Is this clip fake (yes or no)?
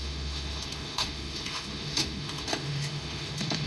yes